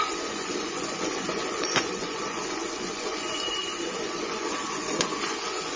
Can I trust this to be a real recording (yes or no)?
no